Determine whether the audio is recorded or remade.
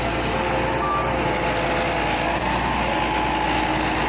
recorded